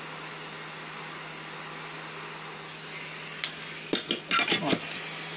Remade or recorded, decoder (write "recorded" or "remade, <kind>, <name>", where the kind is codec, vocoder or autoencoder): recorded